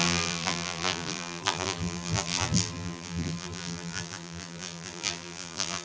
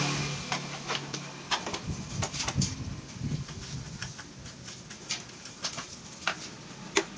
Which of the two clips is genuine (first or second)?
second